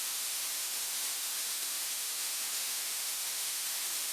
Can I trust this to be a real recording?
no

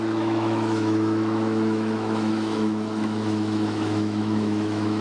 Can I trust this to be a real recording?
no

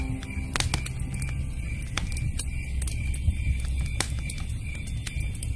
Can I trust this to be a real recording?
yes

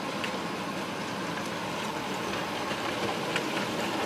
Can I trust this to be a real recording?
yes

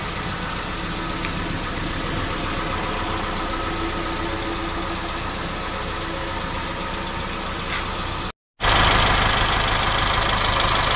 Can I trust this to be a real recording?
yes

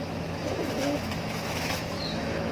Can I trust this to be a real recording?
no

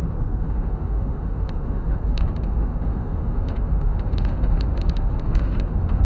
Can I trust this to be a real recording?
no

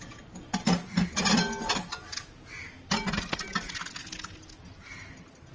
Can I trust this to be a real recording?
yes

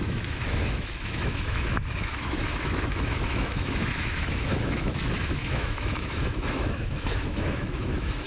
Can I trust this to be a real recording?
no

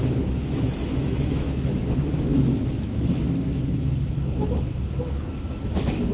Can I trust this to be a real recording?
no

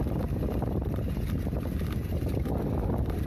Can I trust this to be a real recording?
yes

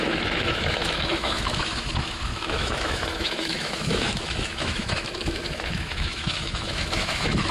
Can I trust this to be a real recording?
no